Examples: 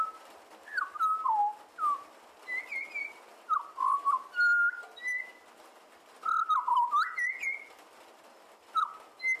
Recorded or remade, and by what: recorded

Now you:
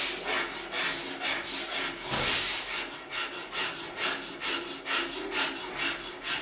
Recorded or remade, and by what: recorded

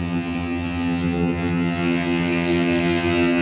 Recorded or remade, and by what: remade, vocoder, HiFi-GAN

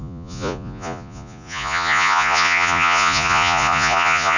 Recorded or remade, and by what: remade, vocoder, Vocos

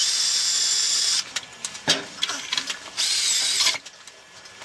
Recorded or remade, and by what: recorded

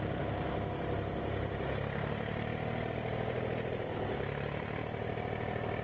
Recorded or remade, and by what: recorded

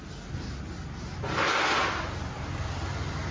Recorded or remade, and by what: recorded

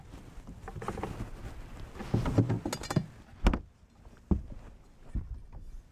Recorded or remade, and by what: recorded